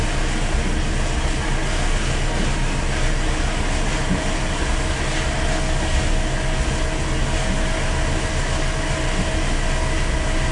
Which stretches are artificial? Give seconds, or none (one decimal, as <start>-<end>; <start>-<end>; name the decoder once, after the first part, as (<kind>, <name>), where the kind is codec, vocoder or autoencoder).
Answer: none